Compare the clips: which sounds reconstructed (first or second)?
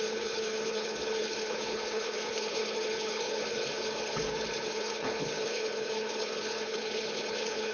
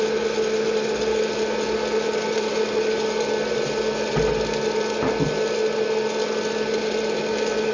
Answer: first